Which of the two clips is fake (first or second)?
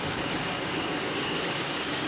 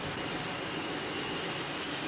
first